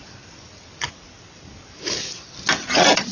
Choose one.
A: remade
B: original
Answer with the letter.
B